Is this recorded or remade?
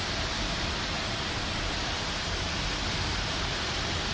recorded